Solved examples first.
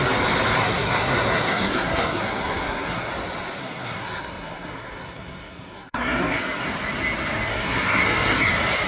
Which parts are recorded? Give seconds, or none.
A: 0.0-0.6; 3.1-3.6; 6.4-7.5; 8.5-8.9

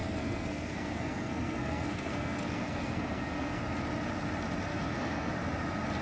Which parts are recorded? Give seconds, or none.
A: 3.6-4.7; 5.3-6.0

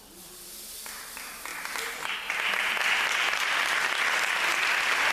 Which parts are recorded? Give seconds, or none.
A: 0.0-5.1

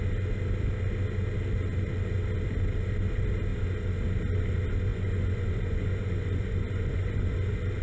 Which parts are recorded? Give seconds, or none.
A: 0.0-4.9; 7.2-7.8

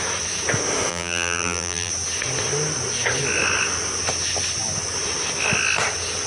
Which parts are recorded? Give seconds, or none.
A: 0.0-0.9; 1.9-6.3

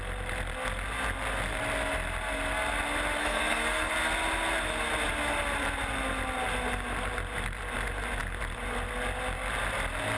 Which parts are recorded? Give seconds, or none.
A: 0.0-3.2; 3.9-10.2

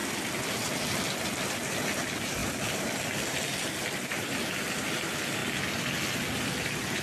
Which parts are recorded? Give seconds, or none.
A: 5.4-6.4